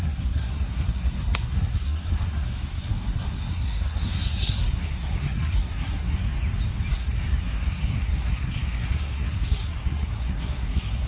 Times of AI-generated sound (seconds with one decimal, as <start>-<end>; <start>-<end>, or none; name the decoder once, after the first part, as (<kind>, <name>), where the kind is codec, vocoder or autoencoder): 0.0-6.2 (codec, SNAC); 6.9-11.1